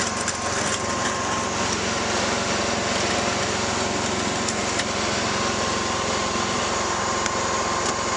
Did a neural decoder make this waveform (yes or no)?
no